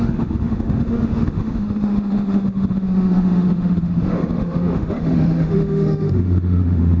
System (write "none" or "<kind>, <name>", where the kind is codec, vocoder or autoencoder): autoencoder, DAC-VAE